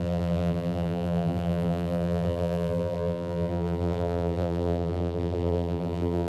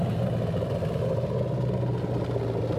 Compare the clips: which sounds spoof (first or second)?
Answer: first